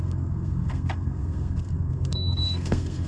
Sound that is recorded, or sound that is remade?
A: remade